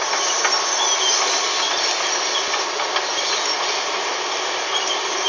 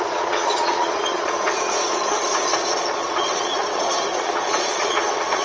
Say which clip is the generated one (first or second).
second